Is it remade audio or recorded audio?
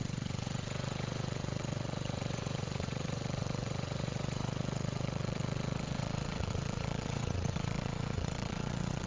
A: remade